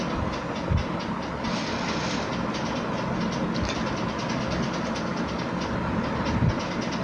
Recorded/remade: recorded